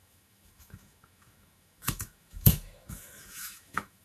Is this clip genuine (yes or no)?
no